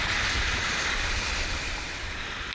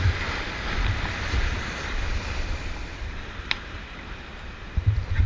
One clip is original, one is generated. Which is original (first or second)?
first